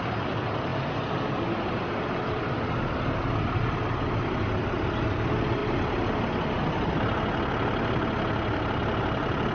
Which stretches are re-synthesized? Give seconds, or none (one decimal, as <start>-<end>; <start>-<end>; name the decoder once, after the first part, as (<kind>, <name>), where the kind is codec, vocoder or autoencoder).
none